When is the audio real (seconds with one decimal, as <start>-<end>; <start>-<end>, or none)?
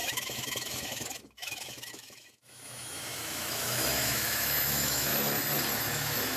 5.1-5.8